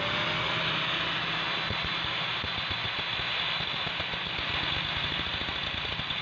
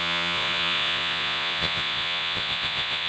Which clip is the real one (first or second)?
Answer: first